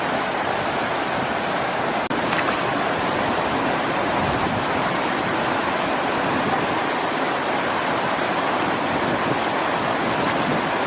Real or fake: real